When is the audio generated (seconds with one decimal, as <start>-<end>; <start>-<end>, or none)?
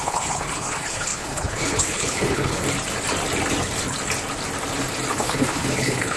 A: 0.0-2.6; 5.1-6.2